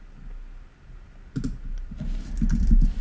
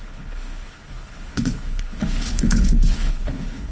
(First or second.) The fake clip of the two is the second